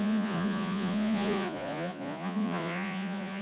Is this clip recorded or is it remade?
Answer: remade